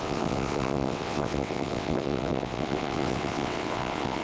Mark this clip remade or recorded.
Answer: remade